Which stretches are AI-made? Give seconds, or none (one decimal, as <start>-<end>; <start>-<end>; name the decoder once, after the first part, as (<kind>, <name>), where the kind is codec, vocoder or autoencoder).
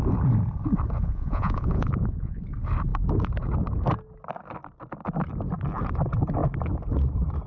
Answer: 1.0-2.4 (vocoder, Vocos)